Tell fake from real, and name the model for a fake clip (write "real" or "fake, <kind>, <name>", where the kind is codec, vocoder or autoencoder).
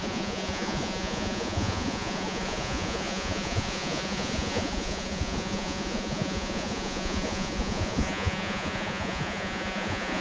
fake, vocoder, Vocos